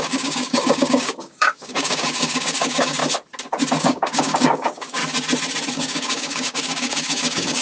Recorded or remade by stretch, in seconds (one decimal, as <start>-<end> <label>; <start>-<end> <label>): 0.0-3.0 remade; 3.0-3.8 recorded; 3.8-5.0 remade; 5.0-5.7 recorded; 5.7-7.6 remade